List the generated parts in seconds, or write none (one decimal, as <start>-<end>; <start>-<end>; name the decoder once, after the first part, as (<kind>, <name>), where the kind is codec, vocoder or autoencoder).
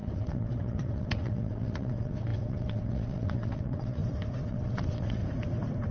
0.0-4.0 (vocoder, WaveNeXt); 4.5-5.2